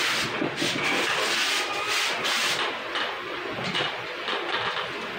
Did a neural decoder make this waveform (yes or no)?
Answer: no